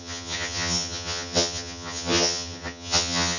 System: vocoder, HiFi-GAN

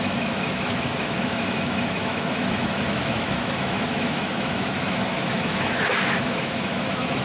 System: autoencoder, DAC-VAE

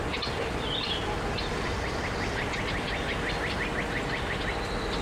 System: none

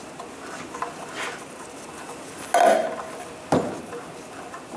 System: none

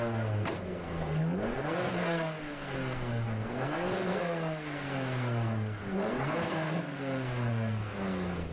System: codec, SNAC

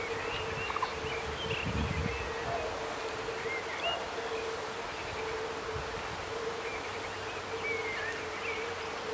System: none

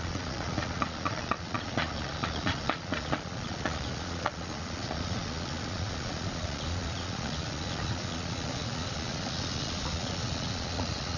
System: vocoder, Vocos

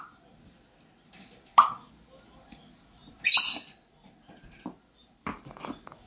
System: none